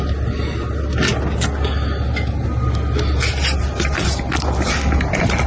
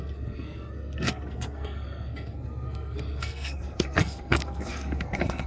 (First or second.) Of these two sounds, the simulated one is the second